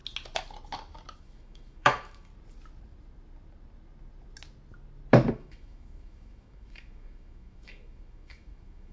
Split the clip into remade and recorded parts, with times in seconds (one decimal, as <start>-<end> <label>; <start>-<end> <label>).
0.0-1.2 recorded; 1.2-2.3 remade; 2.3-5.3 recorded; 5.3-8.9 remade